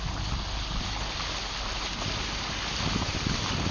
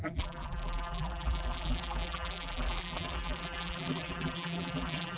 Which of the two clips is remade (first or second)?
second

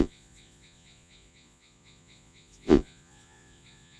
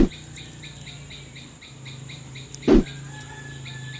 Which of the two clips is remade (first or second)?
first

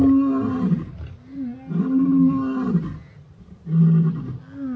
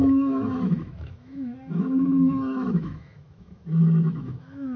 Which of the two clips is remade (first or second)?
second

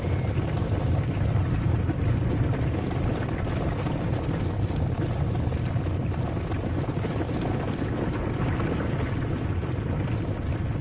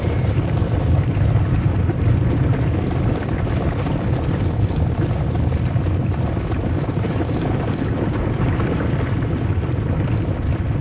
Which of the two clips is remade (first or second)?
second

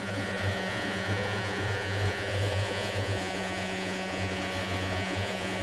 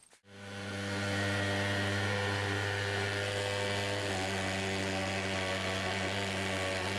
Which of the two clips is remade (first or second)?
first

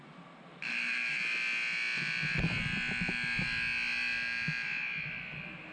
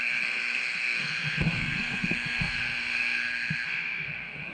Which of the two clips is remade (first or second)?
second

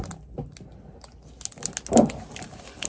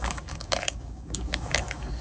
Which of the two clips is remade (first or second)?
second